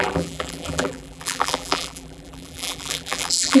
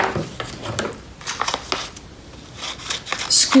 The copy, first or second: first